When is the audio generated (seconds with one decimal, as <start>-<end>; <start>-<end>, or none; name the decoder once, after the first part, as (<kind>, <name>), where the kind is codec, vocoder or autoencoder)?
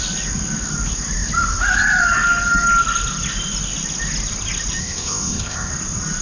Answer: 4.8-5.7 (codec, ZipCodec)